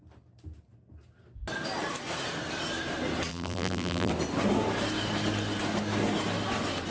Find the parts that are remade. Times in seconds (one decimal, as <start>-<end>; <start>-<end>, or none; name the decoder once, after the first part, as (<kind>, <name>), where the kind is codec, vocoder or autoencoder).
3.3-4.1 (vocoder, BigVGAN v2)